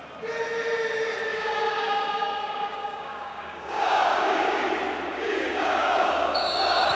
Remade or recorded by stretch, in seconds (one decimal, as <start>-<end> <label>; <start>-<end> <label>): 0.0-1.3 recorded; 1.3-4.6 remade; 4.6-5.1 recorded; 5.1-6.9 remade